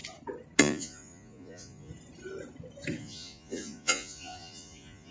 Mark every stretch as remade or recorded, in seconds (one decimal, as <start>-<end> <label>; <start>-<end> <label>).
0.0-0.6 recorded; 0.6-1.9 remade; 1.9-3.0 recorded; 3.0-5.1 remade